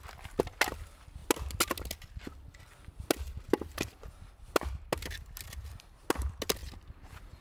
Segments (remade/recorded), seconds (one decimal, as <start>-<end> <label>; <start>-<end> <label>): 0.0-7.4 recorded